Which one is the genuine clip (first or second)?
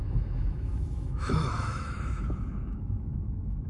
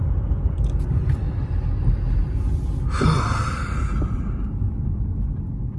second